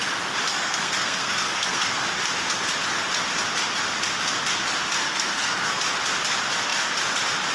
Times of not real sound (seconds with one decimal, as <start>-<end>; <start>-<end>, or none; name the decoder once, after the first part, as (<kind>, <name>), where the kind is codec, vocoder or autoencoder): 0.5-2.0 (codec, SNAC); 5.0-5.8